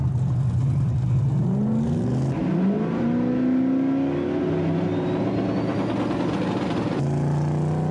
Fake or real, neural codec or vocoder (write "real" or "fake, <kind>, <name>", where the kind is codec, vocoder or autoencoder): real